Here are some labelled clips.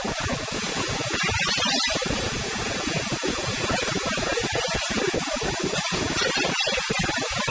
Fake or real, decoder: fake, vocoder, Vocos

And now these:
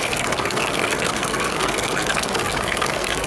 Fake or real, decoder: fake, codec, SNAC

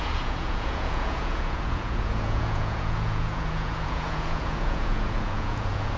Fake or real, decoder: fake, vocoder, Vocos